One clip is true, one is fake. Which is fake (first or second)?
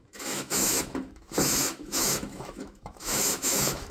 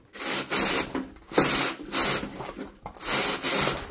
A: first